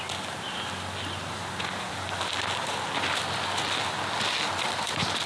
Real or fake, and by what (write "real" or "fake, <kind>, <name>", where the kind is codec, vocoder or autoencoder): real